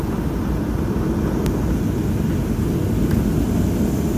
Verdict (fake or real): real